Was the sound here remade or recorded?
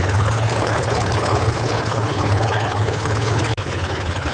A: remade